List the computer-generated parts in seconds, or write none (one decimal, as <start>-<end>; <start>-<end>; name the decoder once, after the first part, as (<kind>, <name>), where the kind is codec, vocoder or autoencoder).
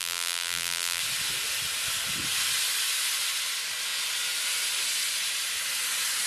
0.0-1.0 (vocoder, BigVGAN v2)